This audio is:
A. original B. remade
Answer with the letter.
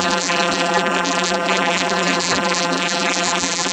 B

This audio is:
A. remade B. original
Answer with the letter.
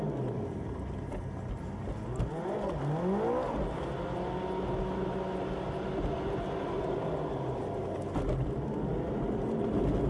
B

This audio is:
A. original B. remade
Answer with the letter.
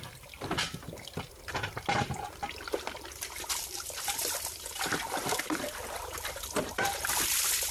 B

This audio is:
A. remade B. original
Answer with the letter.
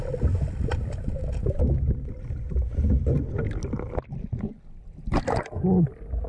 B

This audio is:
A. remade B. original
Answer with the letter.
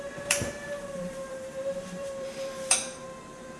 A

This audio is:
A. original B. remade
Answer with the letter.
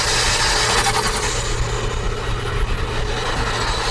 A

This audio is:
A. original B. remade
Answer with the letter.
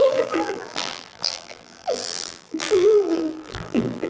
B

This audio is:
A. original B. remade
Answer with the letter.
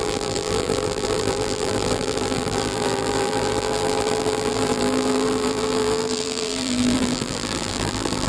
B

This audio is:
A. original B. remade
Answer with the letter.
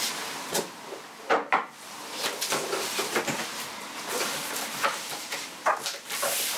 B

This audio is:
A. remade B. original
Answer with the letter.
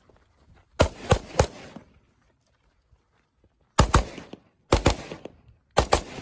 B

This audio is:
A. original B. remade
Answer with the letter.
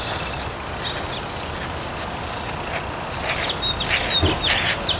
A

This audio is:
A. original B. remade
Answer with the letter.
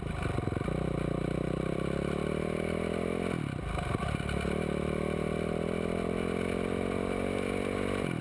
B